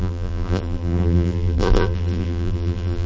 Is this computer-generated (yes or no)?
yes